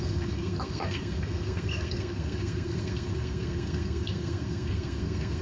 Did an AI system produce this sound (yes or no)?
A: yes